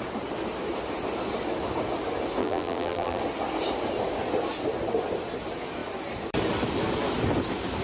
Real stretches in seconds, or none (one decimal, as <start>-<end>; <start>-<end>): 0.0-2.4; 3.2-7.8